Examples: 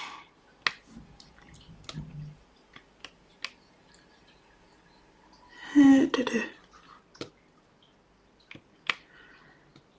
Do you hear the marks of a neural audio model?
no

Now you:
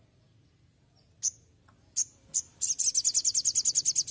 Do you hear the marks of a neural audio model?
no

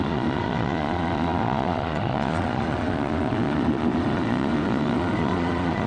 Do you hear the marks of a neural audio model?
yes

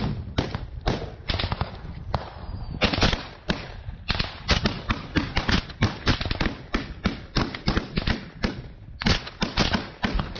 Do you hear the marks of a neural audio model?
no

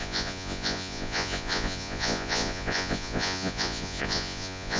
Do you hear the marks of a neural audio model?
yes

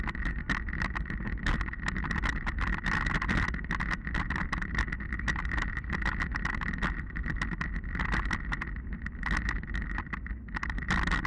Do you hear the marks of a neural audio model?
no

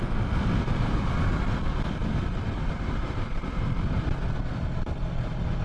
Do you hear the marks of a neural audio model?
no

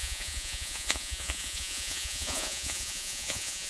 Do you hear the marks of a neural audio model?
yes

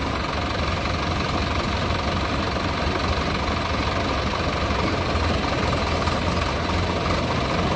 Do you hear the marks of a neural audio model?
no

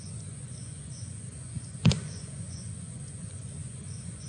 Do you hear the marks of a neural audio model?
yes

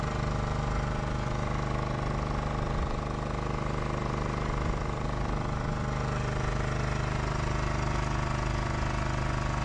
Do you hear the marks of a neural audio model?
no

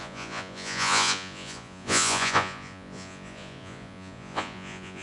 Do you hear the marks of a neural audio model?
yes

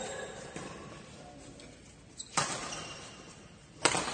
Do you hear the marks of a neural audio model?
no